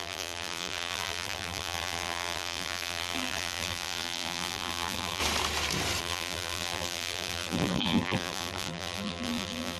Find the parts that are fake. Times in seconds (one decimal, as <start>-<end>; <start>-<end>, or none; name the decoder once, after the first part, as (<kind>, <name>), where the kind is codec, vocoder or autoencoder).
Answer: 0.0-5.2 (vocoder, BigVGAN v2); 6.0-9.8